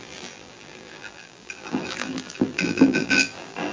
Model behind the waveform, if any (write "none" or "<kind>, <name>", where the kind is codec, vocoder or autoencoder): vocoder, BigVGAN v2